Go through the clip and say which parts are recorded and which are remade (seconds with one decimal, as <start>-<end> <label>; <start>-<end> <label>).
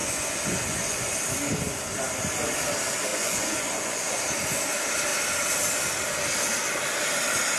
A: 0.0-1.2 remade; 1.2-3.1 recorded; 3.1-4.2 remade; 4.2-7.6 recorded